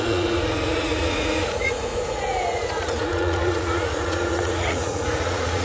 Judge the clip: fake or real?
fake